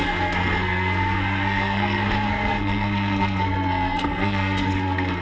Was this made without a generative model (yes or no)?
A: no